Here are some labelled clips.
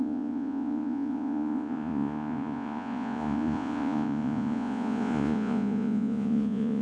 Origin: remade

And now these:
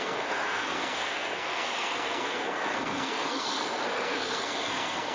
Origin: remade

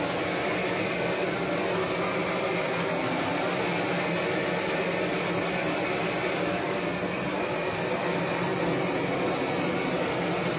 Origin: recorded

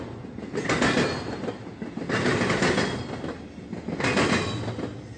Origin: recorded